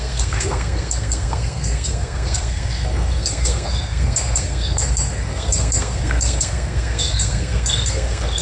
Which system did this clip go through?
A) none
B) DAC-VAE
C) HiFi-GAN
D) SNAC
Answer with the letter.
D